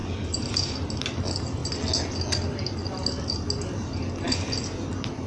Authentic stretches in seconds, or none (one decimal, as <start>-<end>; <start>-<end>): 0.0-5.3